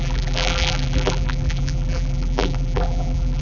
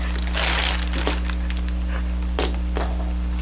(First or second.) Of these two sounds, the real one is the second